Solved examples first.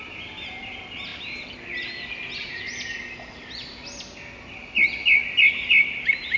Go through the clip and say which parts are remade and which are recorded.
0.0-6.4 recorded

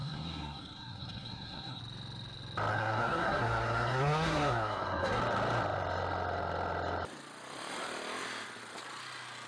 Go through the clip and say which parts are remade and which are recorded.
0.0-1.8 remade; 1.8-2.7 recorded; 2.7-5.2 remade; 5.2-9.5 recorded

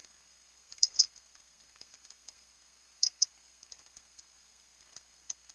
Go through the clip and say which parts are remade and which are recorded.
0.0-5.5 remade

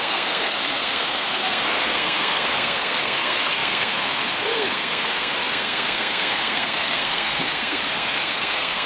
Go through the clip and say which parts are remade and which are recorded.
0.0-8.9 remade

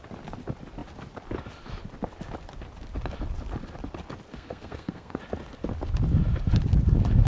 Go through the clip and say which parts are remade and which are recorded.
0.0-4.3 recorded; 4.3-5.2 remade; 5.2-7.3 recorded

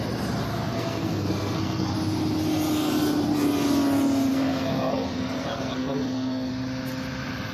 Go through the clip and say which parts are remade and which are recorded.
0.0-0.5 recorded; 0.5-1.9 remade; 1.9-4.3 recorded; 4.3-6.5 remade; 6.5-7.5 recorded

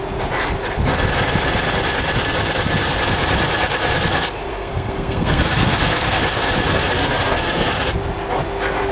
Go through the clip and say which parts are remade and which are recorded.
0.0-4.5 recorded; 4.5-6.2 remade; 6.2-7.0 recorded; 7.0-7.7 remade; 7.7-8.9 recorded

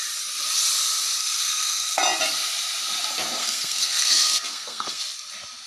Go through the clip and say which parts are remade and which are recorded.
0.0-1.2 recorded; 1.2-2.0 remade; 2.0-3.4 recorded; 3.4-5.0 remade; 5.0-5.7 recorded